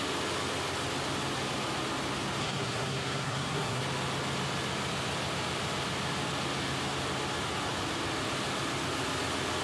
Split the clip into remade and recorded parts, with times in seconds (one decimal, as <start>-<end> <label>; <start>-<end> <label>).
0.0-2.4 recorded; 2.4-3.8 remade; 3.8-9.6 recorded